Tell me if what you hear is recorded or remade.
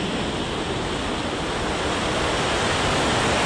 recorded